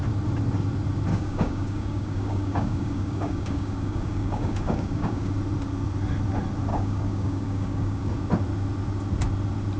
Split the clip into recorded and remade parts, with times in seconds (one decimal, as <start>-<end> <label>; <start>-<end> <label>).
0.0-1.1 recorded; 1.1-5.3 remade; 5.3-6.7 recorded; 6.7-8.1 remade; 8.1-9.8 recorded